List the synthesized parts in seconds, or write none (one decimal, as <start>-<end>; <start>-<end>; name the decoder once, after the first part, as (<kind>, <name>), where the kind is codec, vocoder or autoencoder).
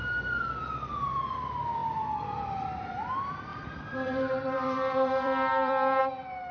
0.0-0.6 (vocoder, BigVGAN v2); 3.5-6.0